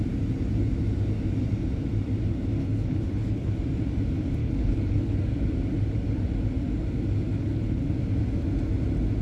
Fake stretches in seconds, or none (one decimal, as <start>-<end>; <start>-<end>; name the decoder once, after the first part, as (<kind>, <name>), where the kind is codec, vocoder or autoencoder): 2.6-3.5 (codec, HILCodec); 4.4-5.2; 7.4-7.9